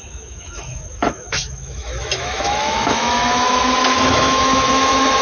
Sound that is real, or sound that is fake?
fake